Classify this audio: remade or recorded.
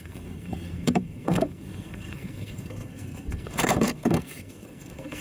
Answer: remade